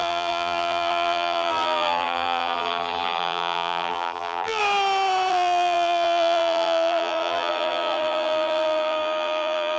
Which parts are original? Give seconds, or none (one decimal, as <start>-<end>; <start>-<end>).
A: 4.6-5.3